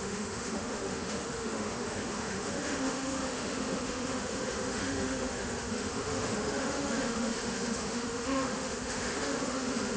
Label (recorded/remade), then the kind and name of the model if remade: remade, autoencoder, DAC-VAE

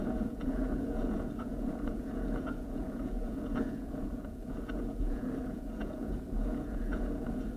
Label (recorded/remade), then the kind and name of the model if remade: remade, vocoder, Vocos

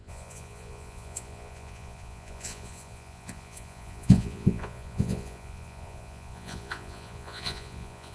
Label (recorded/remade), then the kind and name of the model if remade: remade, vocoder, Vocos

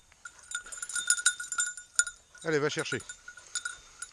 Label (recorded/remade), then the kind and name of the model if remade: recorded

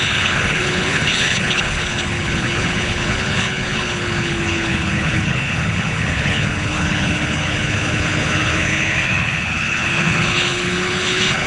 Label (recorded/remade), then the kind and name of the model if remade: remade, codec, HILCodec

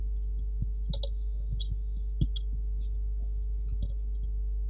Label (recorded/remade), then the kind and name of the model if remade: recorded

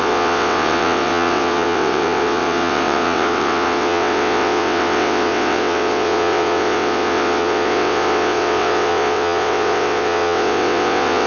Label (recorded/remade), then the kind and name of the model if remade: remade, vocoder, WaveNeXt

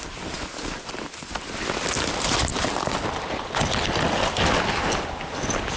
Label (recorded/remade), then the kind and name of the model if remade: recorded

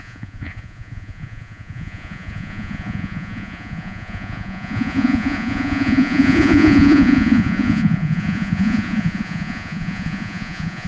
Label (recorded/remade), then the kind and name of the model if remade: remade, vocoder, Vocos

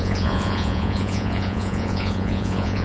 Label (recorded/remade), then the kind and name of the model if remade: remade, vocoder, Vocos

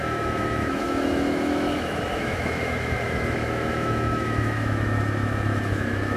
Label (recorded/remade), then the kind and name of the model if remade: remade, autoencoder, DAC-VAE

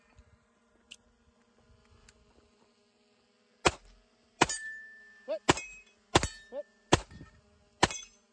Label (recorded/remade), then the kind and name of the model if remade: recorded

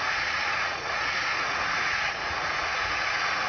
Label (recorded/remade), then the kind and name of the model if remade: remade, vocoder, Vocos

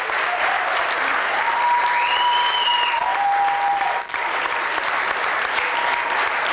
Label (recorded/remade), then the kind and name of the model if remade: recorded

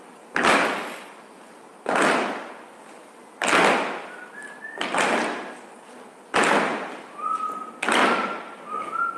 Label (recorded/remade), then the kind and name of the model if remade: recorded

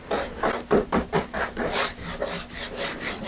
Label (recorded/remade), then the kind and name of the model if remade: recorded